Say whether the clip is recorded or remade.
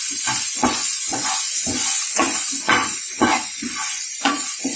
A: remade